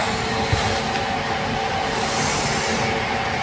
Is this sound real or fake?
real